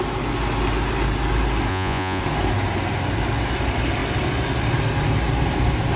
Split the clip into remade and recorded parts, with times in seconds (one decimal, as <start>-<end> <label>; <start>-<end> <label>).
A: 0.0-1.7 recorded; 1.7-2.2 remade; 2.2-6.0 recorded